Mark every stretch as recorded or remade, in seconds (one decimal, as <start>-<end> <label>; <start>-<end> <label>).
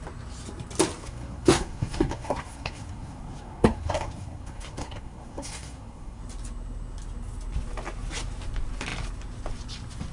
0.0-1.0 recorded; 1.0-6.2 remade; 6.2-10.1 recorded